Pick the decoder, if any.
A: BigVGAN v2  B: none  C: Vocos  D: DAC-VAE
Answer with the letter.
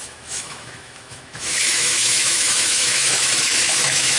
D